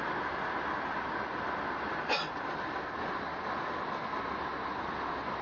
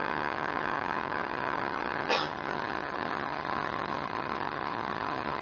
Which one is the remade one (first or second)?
second